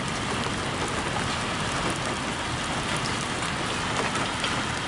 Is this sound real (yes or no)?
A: yes